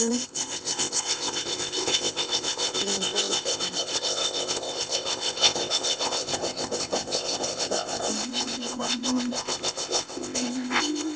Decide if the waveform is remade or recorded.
remade